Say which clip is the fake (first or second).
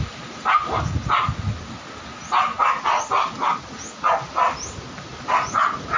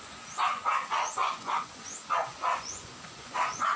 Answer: second